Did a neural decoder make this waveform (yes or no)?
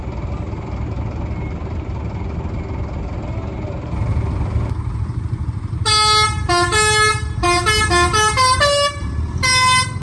no